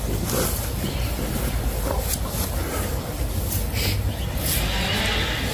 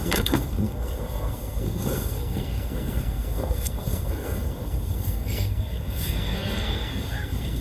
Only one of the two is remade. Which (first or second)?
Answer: second